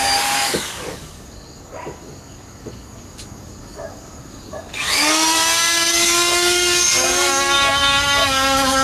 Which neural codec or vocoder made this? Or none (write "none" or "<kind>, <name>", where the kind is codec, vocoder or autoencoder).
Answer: codec, DAC